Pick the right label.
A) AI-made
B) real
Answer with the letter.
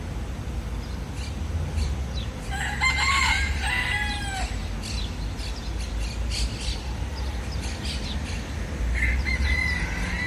B